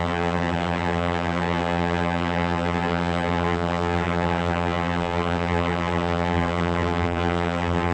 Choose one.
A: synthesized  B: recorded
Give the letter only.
A